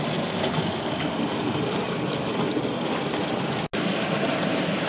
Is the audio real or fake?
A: real